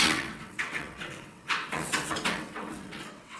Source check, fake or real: fake